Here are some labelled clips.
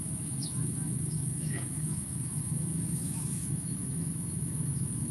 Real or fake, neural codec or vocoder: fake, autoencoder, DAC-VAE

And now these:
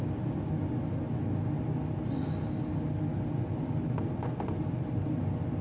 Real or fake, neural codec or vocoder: real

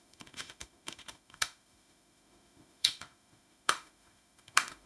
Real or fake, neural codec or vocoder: fake, autoencoder, DAC-VAE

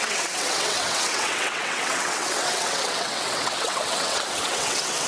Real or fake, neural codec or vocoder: fake, vocoder, WaveNeXt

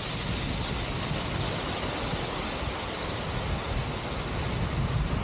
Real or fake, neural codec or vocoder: real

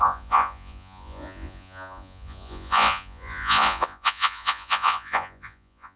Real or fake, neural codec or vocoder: fake, vocoder, Vocos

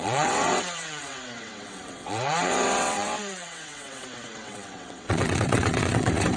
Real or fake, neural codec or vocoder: fake, vocoder, WaveNeXt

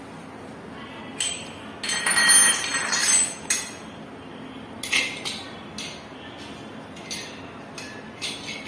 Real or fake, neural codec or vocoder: real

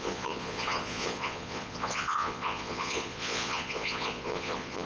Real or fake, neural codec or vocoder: fake, vocoder, Vocos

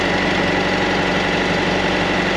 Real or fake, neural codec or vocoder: real